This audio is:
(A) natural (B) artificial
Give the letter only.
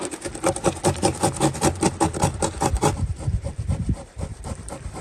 B